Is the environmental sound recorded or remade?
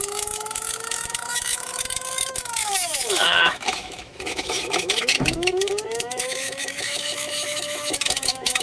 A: remade